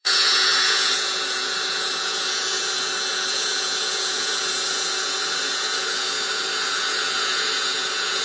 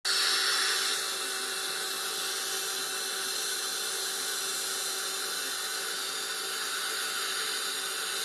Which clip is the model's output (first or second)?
first